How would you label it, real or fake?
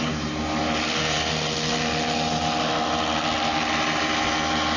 real